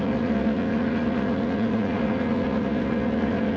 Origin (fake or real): fake